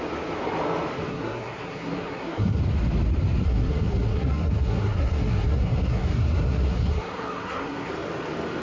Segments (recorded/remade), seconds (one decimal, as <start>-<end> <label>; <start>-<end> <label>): 0.0-1.1 recorded; 1.1-2.6 remade; 2.6-3.4 recorded; 3.4-7.9 remade; 7.9-8.6 recorded